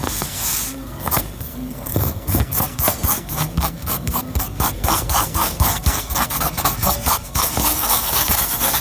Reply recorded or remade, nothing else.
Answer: remade